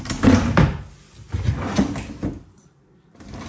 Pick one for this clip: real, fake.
real